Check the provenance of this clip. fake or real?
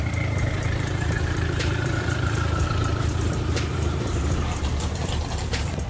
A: fake